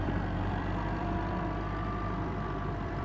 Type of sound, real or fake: fake